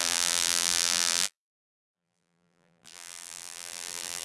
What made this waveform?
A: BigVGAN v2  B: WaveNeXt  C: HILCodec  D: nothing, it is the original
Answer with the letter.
A